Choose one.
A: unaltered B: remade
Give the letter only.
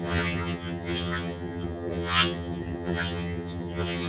B